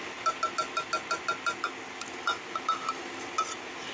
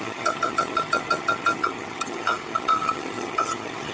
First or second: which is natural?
first